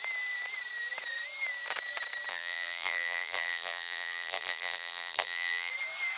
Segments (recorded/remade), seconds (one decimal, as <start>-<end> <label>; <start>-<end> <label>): 0.0-2.3 recorded; 2.3-5.7 remade; 5.7-6.2 recorded